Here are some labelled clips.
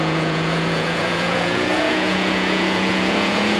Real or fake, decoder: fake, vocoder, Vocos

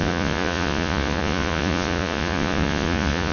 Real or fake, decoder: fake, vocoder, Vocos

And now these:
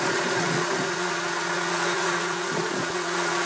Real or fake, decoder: fake, vocoder, Vocos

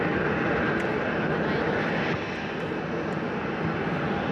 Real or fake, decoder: real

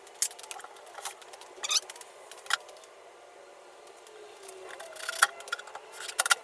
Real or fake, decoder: real